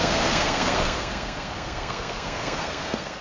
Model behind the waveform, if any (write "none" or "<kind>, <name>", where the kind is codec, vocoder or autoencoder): codec, SNAC